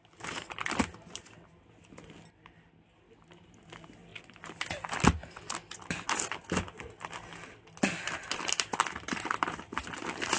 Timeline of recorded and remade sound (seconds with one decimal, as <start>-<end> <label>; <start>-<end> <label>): 0.0-10.4 recorded